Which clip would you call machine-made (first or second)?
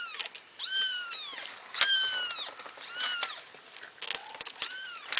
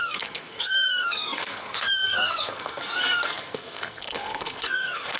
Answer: second